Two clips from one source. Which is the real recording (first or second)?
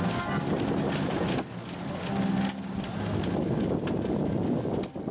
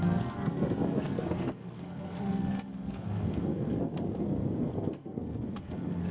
first